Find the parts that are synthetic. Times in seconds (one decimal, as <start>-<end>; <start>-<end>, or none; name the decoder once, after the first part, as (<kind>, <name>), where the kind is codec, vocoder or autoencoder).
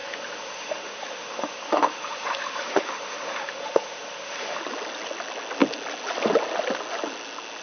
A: 0.0-4.6 (autoencoder, DAC-VAE)